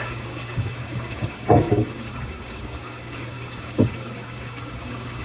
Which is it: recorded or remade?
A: remade